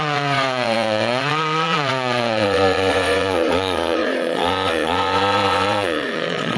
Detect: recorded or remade remade